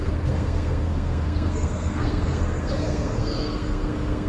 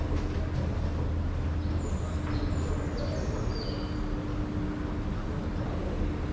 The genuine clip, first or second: second